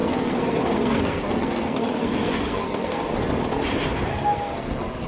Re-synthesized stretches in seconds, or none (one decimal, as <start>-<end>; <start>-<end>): 0.0-3.1; 4.1-5.1